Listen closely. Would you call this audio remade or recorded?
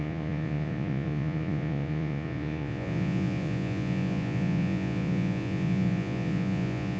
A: remade